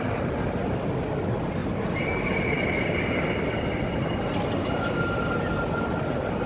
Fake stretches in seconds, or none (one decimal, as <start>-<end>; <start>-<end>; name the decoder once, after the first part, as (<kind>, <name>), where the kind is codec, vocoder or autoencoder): none